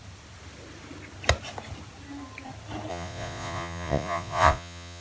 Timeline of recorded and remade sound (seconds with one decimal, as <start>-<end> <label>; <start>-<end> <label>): 0.0-2.9 recorded; 2.9-5.0 remade